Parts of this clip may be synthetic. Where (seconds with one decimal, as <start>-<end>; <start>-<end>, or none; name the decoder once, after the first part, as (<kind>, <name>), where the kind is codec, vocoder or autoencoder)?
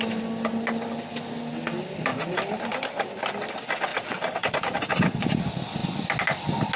2.1-3.1 (vocoder, BigVGAN v2); 3.9-4.7